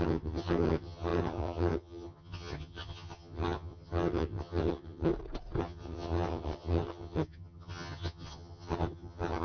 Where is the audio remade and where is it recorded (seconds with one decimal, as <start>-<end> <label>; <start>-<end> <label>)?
0.0-5.1 remade; 5.1-5.6 recorded; 5.6-9.4 remade